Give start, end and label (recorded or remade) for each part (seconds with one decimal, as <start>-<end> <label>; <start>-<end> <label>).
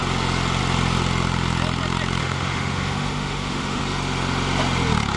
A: 0.0-2.2 recorded; 2.2-3.8 remade; 3.8-5.2 recorded